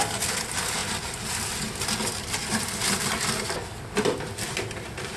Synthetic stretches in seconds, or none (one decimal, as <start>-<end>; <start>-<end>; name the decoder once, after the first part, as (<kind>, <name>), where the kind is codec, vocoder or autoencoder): none